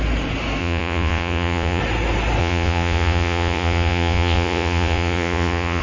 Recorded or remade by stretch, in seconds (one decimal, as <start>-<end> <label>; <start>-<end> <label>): 0.0-0.6 recorded; 0.6-1.8 remade; 1.8-2.4 recorded; 2.4-5.8 remade